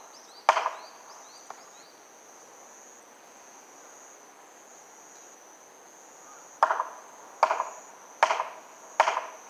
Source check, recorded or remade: recorded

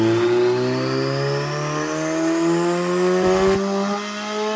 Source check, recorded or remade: recorded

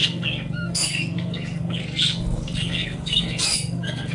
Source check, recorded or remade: remade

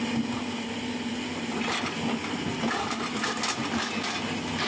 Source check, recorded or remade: recorded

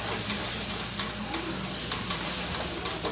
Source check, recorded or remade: recorded